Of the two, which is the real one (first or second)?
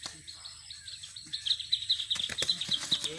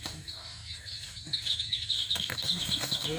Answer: first